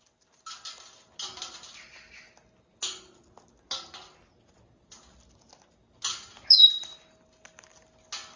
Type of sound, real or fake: real